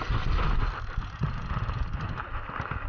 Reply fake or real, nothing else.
real